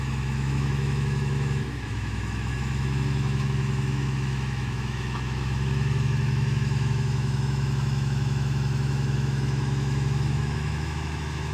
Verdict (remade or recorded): remade